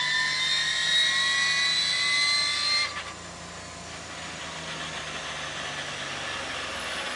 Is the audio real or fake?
real